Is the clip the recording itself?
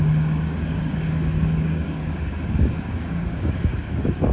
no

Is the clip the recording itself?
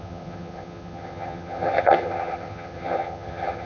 no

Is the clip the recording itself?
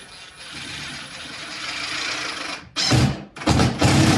yes